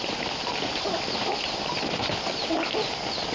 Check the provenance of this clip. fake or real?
real